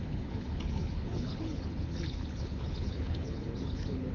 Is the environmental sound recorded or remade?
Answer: remade